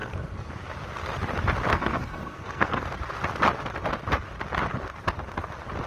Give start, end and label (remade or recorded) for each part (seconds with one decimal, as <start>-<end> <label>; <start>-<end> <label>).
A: 0.0-0.5 remade; 0.5-1.7 recorded; 1.7-2.8 remade; 2.8-5.9 recorded